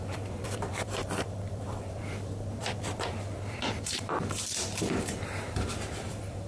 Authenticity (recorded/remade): remade